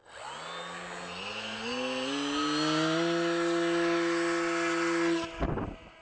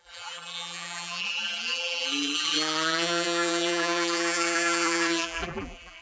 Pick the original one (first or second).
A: first